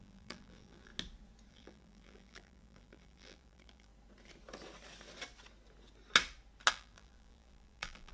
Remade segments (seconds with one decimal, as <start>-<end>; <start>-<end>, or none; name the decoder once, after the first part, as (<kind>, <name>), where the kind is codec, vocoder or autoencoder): 0.0-0.9 (vocoder, BigVGAN v2); 1.5-3.9; 6.7-8.1